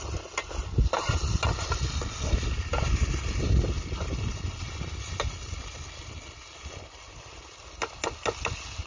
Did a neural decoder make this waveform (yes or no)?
no